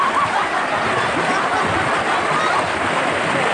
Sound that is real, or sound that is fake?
real